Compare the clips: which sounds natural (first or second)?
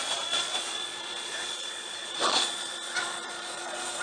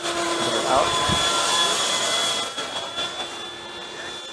second